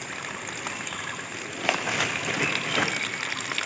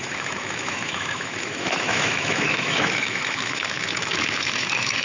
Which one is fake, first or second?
second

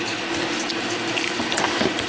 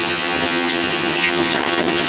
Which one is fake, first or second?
second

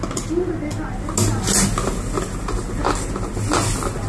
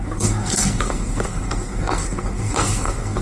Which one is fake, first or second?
second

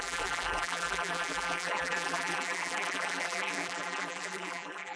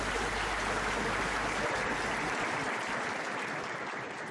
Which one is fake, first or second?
first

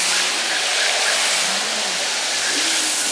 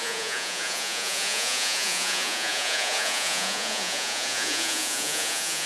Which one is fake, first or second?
second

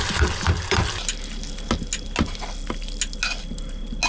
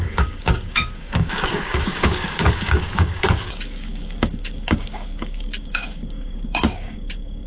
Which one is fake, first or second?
second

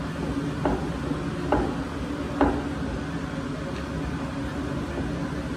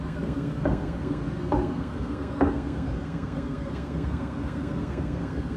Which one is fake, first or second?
second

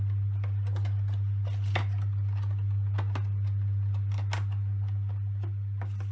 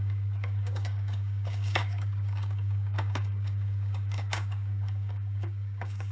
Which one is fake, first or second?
second